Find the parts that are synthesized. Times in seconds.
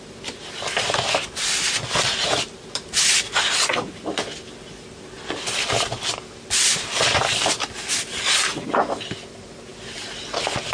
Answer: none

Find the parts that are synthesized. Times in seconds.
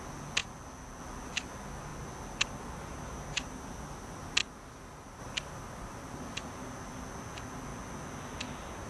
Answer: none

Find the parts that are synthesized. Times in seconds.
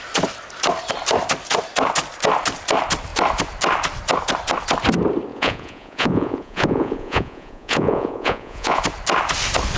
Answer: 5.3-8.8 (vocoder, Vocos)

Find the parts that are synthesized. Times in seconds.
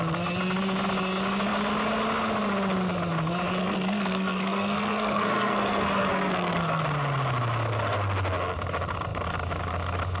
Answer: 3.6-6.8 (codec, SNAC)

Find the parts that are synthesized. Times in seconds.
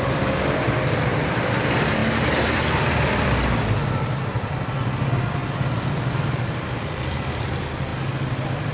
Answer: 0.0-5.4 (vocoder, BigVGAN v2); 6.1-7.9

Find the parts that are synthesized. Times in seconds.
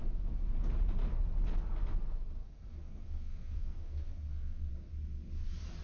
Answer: 2.4-4.7 (codec, SNAC)